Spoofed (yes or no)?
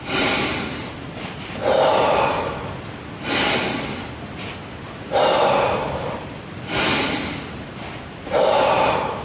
no